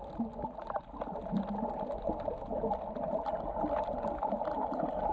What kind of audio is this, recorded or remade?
recorded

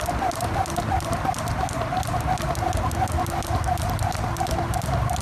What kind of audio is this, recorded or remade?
recorded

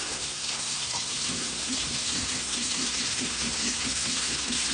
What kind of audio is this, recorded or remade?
remade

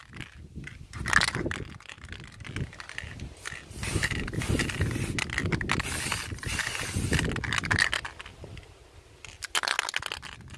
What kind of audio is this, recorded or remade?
recorded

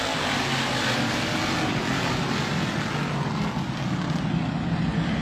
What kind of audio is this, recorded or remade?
recorded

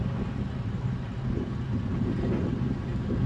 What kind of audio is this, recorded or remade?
recorded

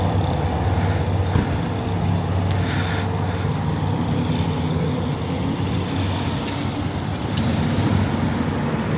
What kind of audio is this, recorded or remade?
recorded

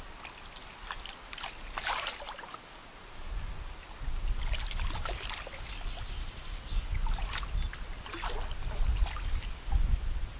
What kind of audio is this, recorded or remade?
recorded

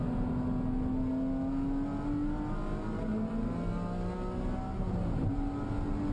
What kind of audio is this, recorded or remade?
recorded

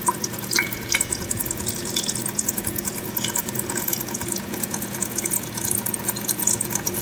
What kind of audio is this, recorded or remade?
remade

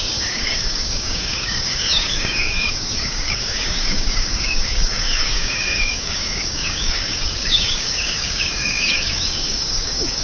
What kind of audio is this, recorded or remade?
remade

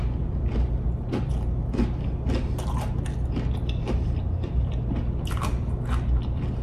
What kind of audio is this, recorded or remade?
recorded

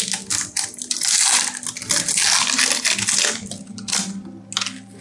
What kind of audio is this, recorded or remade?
recorded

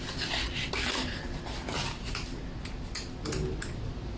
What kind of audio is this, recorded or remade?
recorded